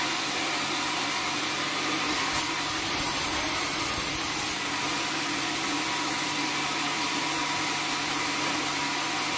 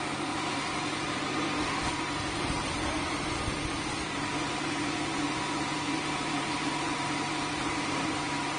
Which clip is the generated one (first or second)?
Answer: second